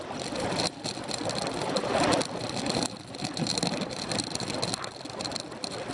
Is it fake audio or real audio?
fake